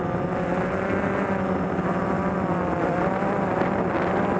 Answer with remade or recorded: recorded